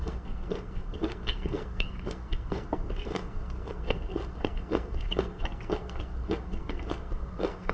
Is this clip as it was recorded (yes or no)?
no